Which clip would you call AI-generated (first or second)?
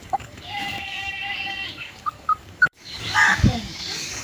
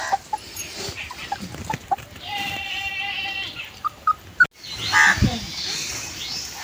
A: first